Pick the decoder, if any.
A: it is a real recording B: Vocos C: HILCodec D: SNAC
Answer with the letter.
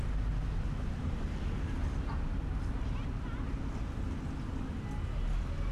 A